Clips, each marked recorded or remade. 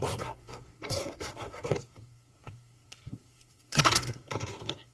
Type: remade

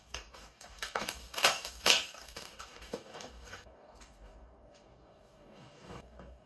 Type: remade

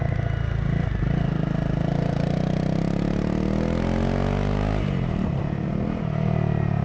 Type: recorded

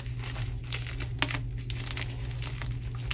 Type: recorded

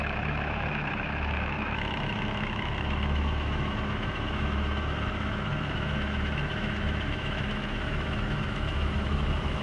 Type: remade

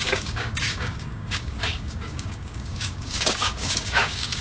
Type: remade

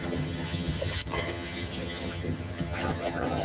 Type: remade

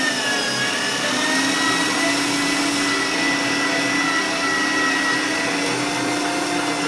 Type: recorded